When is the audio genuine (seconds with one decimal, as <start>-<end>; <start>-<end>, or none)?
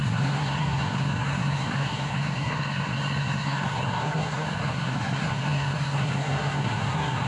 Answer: none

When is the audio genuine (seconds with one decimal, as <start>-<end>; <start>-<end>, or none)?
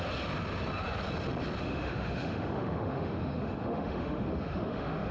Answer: 0.0-1.6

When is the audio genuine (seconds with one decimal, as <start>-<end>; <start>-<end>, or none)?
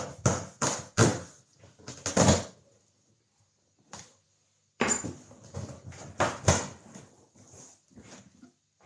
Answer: 0.0-8.9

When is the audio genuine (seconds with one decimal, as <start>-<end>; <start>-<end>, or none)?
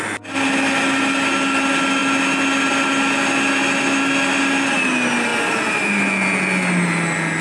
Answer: 0.0-7.4